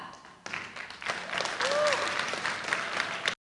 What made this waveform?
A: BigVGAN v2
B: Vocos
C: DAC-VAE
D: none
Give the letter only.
D